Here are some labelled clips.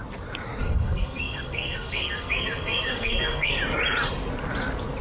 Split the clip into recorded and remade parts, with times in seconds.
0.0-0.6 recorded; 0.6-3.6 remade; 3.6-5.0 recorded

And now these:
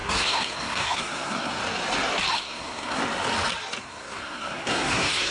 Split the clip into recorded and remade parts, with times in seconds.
0.0-1.6 remade; 1.6-2.3 recorded; 2.3-3.0 remade; 3.0-3.8 recorded; 3.8-5.3 remade

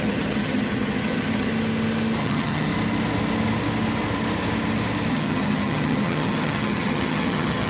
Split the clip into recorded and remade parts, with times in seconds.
0.0-1.5 remade; 1.5-2.2 recorded; 2.2-2.7 remade; 2.7-5.1 recorded; 5.1-7.7 remade

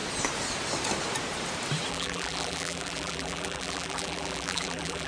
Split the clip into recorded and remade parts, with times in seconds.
0.0-1.9 recorded; 1.9-5.1 remade

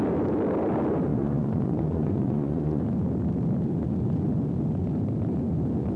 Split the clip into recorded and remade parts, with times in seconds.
0.0-1.1 recorded; 1.1-2.8 remade; 2.8-6.0 recorded

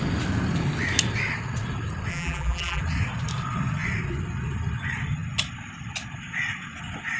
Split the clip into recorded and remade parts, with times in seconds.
0.0-2.1 recorded; 2.1-2.8 remade; 2.8-7.2 recorded

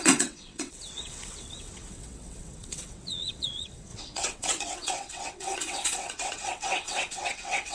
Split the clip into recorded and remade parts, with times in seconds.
0.0-7.7 remade

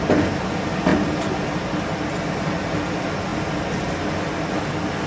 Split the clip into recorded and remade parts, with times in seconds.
0.0-5.1 recorded